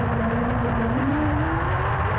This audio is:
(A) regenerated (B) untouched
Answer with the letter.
B